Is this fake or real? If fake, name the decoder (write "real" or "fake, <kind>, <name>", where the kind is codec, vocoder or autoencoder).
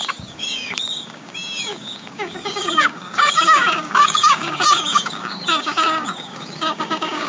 fake, codec, DAC